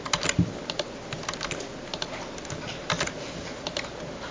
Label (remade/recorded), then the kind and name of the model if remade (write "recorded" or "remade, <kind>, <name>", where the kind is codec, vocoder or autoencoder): recorded